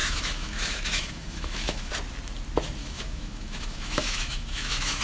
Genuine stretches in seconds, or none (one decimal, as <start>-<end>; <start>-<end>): 1.9-2.8